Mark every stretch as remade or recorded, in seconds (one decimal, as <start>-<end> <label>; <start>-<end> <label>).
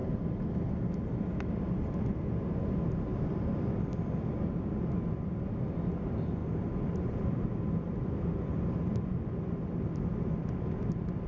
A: 0.0-3.1 recorded; 3.1-4.3 remade; 4.3-6.4 recorded; 6.4-10.0 remade; 10.0-11.3 recorded